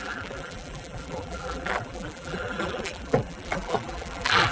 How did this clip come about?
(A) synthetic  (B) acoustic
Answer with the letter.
A